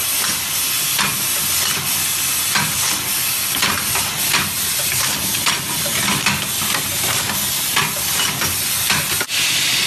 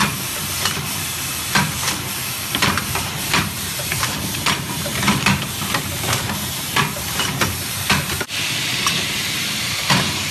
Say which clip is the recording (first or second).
first